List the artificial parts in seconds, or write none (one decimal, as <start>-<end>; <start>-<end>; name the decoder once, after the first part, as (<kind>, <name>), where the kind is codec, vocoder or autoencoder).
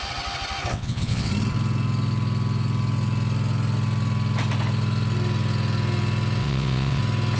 0.7-1.3 (vocoder, WaveNeXt); 6.4-7.0